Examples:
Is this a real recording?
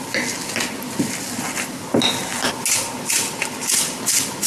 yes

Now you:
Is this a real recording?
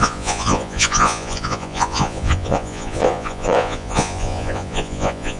no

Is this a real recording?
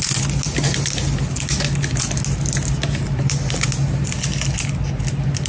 yes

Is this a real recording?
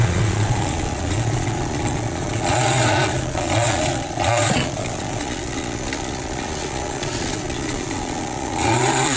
no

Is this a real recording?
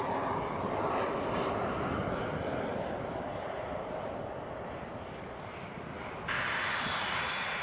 yes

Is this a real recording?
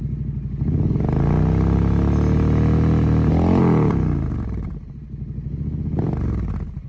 yes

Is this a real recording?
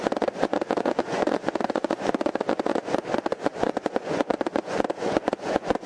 no